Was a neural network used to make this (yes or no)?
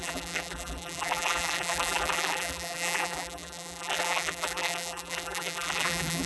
yes